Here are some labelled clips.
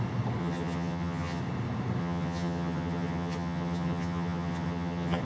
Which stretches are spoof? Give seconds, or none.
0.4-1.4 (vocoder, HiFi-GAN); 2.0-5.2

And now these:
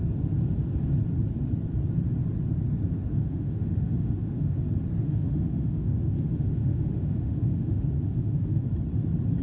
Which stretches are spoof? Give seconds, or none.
3.1-4.6 (autoencoder, DAC-VAE); 5.0-8.6

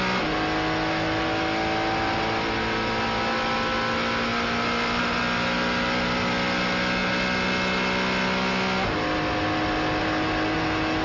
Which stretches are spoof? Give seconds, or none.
none

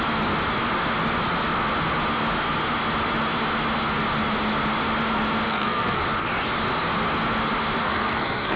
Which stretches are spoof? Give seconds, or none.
5.5-6.0 (codec, SNAC); 7.8-8.6